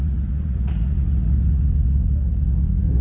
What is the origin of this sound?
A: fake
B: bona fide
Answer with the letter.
A